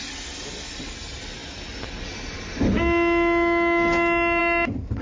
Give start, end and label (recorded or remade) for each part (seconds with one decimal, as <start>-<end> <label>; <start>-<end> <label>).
0.0-5.0 recorded